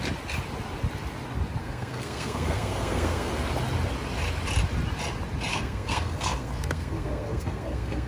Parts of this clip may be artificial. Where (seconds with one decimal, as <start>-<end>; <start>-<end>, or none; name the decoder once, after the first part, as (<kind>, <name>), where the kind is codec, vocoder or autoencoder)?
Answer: 1.6-3.3 (codec, SNAC); 5.5-8.1